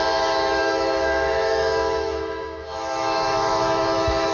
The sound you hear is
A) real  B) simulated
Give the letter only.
B